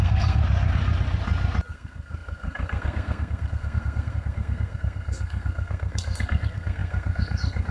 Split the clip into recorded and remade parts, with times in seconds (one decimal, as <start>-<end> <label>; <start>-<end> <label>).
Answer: 0.0-0.4 remade; 0.4-1.7 recorded; 1.7-7.7 remade